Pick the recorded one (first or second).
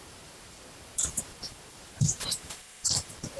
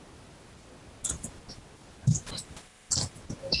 second